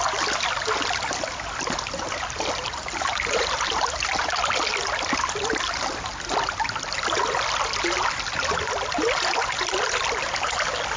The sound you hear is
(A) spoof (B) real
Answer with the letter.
B